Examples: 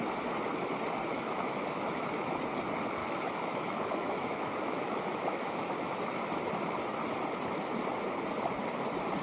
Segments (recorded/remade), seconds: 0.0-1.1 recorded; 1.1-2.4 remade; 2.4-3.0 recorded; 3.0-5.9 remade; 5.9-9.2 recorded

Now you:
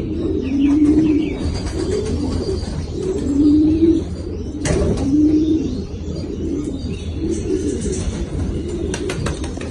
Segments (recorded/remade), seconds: 0.0-8.8 remade; 8.8-9.7 recorded

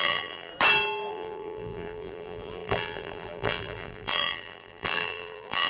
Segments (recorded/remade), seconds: 0.0-0.5 remade; 0.5-1.1 recorded; 1.1-5.7 remade

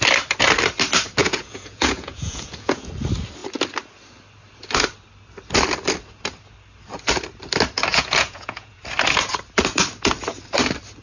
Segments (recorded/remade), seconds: 0.0-1.2 recorded; 1.2-2.9 remade; 2.9-7.9 recorded; 7.9-8.8 remade; 8.8-11.0 recorded

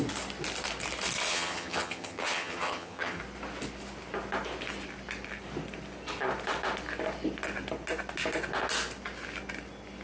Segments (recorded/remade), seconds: 0.0-1.3 recorded; 1.3-3.2 remade; 3.2-10.0 recorded